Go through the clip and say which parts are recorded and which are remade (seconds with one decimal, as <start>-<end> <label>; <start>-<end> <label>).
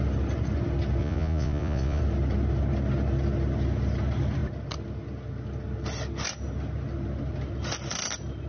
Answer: 0.0-1.0 recorded; 1.0-2.0 remade; 2.0-8.5 recorded